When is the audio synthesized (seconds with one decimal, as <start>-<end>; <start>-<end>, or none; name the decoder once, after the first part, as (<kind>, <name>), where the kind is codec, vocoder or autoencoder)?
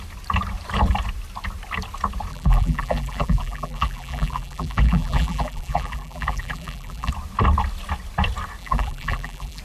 2.3-7.1 (vocoder, BigVGAN v2); 8.6-9.6